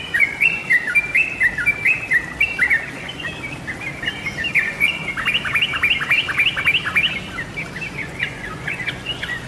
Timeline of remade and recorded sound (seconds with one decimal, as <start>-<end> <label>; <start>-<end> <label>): 0.0-0.6 remade; 0.6-2.9 recorded; 2.9-3.3 remade; 3.3-4.6 recorded; 4.6-5.0 remade; 5.0-7.9 recorded; 7.9-9.5 remade